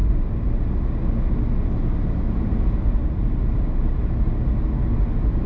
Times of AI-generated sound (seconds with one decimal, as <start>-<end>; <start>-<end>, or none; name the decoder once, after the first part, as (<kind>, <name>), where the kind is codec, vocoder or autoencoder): none